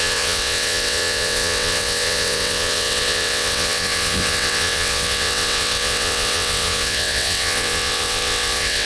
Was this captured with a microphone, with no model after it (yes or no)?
no